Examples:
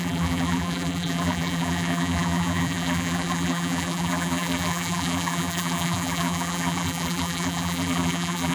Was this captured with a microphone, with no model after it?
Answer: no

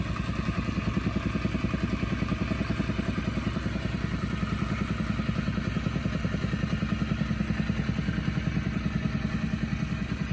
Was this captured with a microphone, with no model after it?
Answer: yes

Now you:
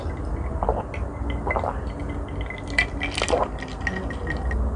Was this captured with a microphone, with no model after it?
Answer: yes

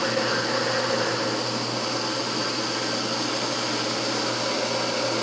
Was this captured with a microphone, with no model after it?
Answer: yes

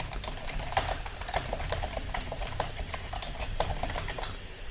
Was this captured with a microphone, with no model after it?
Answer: no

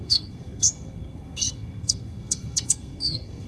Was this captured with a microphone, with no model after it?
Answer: no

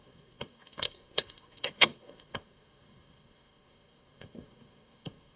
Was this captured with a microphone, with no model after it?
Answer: no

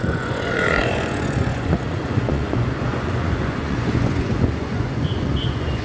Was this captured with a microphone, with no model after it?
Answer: no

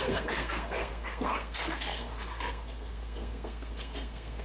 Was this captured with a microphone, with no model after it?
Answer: no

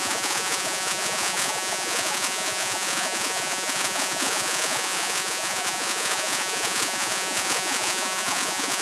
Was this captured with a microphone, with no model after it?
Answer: no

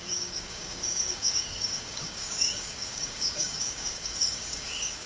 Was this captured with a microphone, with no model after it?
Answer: no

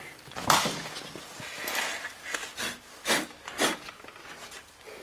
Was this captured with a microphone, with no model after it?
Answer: yes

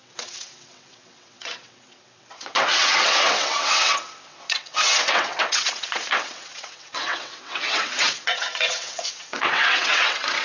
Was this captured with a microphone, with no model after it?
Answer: no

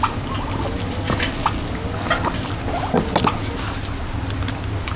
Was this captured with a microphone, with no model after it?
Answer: yes